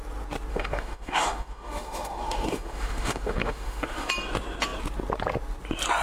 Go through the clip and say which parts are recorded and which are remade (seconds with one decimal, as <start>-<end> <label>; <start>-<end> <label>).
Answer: 0.0-0.5 recorded; 0.5-4.1 remade; 4.1-6.0 recorded